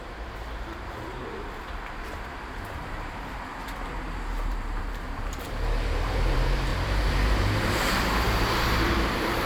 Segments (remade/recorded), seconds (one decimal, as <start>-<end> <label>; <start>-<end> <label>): 0.0-9.5 remade

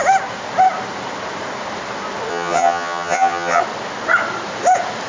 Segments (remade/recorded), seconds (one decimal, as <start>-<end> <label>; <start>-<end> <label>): 0.0-2.3 recorded; 2.3-3.6 remade; 3.6-5.1 recorded

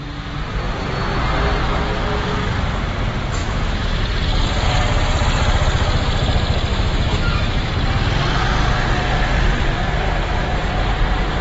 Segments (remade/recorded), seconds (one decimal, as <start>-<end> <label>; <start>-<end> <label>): 0.0-3.4 recorded; 3.4-4.0 remade; 4.0-6.7 recorded; 6.7-7.7 remade; 7.7-11.4 recorded